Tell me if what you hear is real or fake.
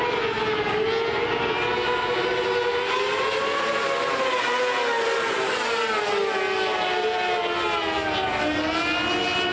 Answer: real